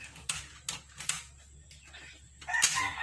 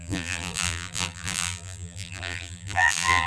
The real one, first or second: first